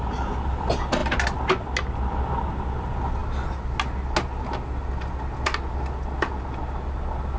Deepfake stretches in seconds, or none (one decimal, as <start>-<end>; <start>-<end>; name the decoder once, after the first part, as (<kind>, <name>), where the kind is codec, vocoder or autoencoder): none